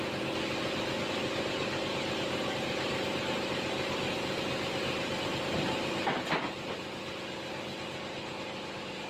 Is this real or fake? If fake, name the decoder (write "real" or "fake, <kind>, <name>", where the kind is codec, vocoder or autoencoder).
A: real